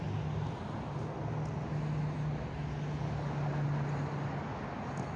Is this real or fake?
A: real